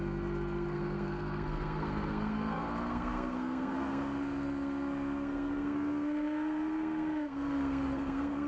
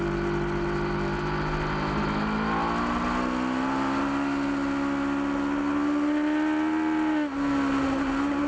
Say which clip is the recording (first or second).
second